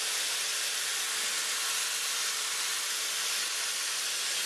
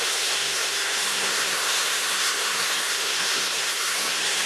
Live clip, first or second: first